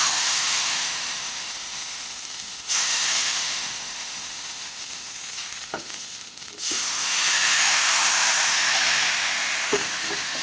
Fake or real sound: fake